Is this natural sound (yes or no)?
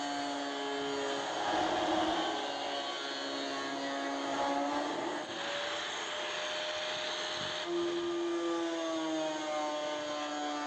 yes